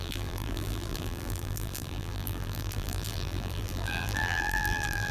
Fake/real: fake